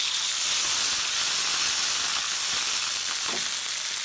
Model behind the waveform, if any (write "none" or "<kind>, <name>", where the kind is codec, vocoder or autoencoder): none